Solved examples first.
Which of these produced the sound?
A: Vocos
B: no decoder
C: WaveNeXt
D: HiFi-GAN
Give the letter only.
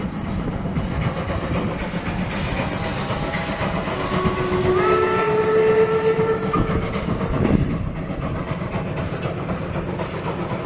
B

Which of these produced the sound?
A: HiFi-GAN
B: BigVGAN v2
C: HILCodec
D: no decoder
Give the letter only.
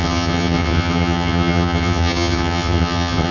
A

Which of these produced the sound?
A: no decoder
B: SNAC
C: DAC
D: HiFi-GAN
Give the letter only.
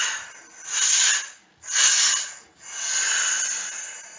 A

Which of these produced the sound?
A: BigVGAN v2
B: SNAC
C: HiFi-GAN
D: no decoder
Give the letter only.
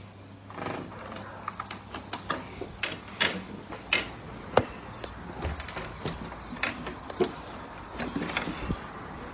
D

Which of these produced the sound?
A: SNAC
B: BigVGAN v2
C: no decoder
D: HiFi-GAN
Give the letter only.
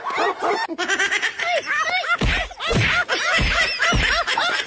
C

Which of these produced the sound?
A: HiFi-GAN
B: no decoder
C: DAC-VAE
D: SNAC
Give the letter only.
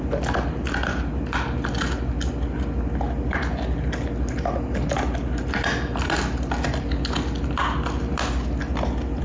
B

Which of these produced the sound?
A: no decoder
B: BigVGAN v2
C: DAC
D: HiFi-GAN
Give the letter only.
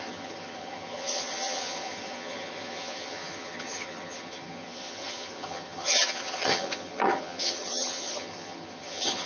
D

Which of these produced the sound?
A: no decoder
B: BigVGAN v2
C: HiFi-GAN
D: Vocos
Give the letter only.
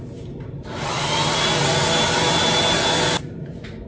A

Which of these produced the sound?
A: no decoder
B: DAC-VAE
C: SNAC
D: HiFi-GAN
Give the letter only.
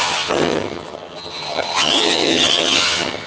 D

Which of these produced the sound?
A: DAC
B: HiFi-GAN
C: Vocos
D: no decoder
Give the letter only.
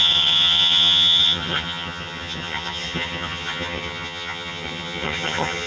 B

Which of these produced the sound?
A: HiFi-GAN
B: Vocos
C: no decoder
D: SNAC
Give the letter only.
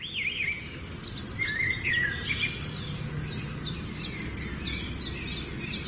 C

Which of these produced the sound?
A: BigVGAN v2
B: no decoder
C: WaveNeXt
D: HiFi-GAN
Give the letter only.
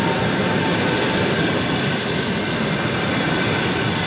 B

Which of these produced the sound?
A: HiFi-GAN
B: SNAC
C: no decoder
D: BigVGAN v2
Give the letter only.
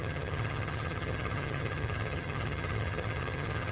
A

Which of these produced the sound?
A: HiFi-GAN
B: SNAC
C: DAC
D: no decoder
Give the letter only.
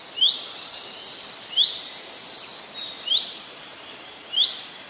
D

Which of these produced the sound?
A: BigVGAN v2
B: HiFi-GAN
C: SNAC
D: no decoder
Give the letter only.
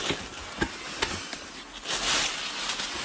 D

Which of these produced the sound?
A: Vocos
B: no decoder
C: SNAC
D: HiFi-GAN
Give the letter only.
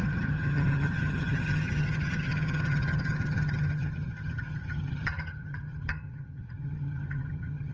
D